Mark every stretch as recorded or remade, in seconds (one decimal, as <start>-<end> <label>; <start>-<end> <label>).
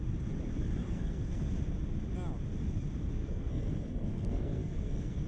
0.0-0.8 recorded; 0.8-1.5 remade; 1.5-3.2 recorded; 3.2-5.3 remade